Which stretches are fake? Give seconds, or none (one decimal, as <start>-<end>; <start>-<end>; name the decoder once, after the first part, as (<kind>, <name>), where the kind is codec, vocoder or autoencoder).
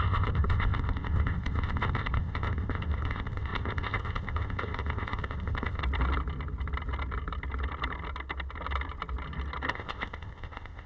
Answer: 0.0-5.8 (codec, ZipCodec); 9.7-10.9